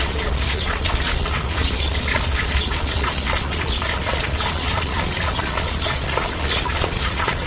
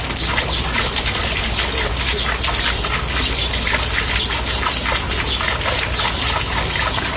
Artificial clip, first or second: first